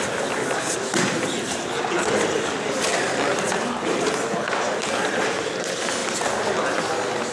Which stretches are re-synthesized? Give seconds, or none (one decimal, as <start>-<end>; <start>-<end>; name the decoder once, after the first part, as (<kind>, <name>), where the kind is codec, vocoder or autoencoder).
none

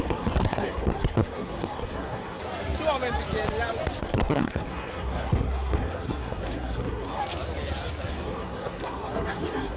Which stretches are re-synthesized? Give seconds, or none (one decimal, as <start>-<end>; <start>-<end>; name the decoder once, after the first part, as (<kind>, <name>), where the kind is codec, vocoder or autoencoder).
0.0-2.4 (codec, SNAC); 4.0-7.2; 8.1-9.8

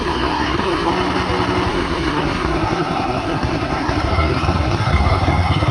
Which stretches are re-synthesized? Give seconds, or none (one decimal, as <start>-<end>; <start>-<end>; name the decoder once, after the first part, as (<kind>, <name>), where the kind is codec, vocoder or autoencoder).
0.0-0.9 (codec, SNAC); 1.7-5.7

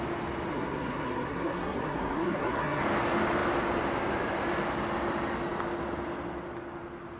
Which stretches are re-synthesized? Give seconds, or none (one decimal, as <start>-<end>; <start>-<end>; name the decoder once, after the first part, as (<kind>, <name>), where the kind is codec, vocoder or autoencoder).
0.5-2.8 (codec, SNAC)